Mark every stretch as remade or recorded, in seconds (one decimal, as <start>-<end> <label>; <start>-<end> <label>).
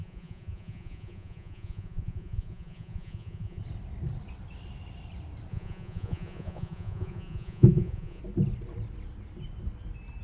0.0-3.6 remade; 3.6-5.5 recorded; 5.5-8.2 remade; 8.2-10.2 recorded